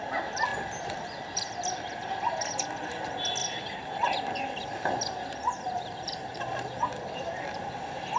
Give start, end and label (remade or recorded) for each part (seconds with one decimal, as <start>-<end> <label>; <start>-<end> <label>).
0.0-8.2 recorded